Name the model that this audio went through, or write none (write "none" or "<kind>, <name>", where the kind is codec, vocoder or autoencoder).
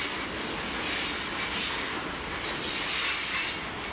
none